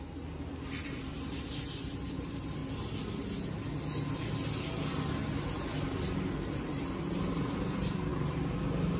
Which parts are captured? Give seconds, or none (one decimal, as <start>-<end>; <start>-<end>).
0.0-9.0